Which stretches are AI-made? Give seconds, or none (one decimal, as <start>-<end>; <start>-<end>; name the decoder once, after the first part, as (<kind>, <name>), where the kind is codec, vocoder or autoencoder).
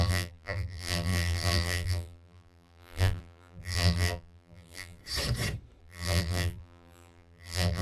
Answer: 0.0-5.0 (vocoder, BigVGAN v2); 5.8-7.8